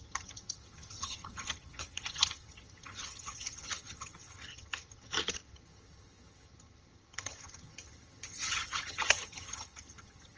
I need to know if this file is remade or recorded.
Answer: remade